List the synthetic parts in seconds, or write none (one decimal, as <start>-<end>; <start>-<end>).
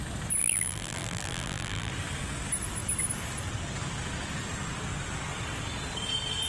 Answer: 0.4-1.9